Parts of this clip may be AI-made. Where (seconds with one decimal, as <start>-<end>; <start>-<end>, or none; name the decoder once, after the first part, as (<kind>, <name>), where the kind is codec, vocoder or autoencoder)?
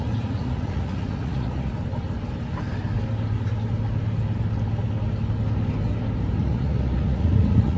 0.0-1.7 (vocoder, Vocos); 6.4-7.8